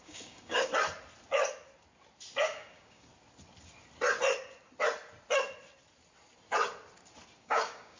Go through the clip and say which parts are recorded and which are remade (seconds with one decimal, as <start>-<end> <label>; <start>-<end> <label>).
0.0-0.7 remade; 0.7-2.4 recorded; 2.4-3.1 remade; 3.1-7.4 recorded; 7.4-8.0 remade